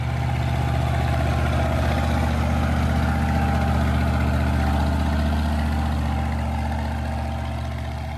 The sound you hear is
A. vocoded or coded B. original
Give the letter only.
B